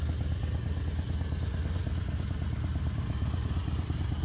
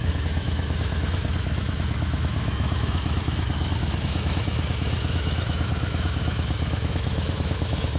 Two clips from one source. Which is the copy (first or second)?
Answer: second